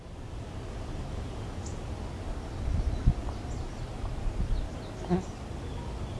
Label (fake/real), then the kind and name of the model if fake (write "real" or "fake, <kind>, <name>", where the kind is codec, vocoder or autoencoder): real